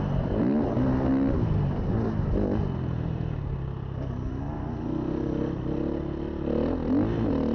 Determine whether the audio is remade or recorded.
recorded